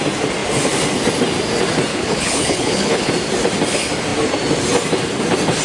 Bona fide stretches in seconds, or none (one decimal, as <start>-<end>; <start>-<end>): 0.0-1.9; 3.1-5.6